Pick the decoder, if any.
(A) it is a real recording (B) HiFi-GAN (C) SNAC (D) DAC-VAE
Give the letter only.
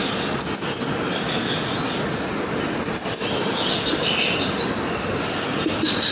A